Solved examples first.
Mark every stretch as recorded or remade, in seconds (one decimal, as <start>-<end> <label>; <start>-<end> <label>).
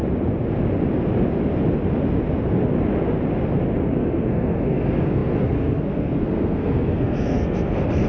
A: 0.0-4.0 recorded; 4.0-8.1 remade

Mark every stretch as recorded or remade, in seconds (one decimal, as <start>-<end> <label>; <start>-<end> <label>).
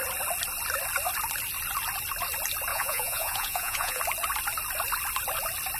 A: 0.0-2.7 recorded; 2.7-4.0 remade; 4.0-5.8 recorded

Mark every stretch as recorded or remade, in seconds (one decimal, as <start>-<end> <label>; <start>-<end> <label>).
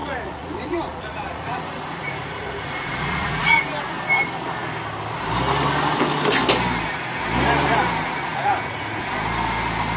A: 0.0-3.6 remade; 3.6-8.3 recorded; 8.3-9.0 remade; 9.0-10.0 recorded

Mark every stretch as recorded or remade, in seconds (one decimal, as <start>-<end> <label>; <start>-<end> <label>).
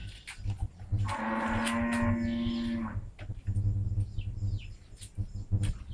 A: 0.0-5.9 recorded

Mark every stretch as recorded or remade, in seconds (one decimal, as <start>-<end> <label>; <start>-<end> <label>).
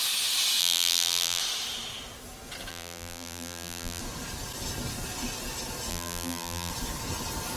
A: 0.0-0.6 recorded; 0.6-1.4 remade; 1.4-2.7 recorded; 2.7-4.0 remade; 4.0-5.9 recorded; 5.9-6.7 remade; 6.7-7.6 recorded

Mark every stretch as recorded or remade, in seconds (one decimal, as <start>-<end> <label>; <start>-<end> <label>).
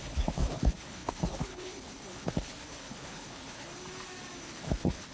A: 0.0-3.7 remade; 3.7-4.4 recorded; 4.4-5.1 remade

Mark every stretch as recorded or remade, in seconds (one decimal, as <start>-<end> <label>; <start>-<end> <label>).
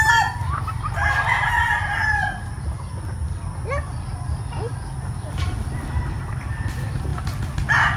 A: 0.0-8.0 recorded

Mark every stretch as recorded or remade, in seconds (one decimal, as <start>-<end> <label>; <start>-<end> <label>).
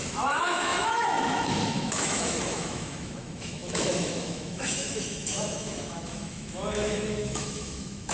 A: 0.0-8.1 remade